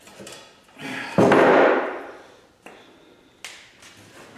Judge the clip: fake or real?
real